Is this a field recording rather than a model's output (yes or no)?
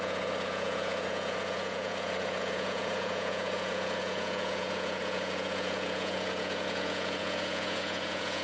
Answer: no